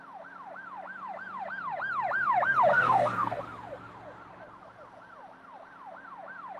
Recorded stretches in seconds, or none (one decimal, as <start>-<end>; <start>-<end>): 0.0-2.7; 3.4-6.6